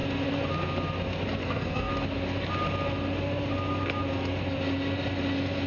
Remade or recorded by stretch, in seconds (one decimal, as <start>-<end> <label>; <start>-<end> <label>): 0.0-1.4 recorded; 1.4-1.9 remade; 1.9-5.7 recorded